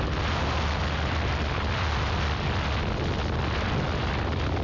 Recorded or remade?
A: recorded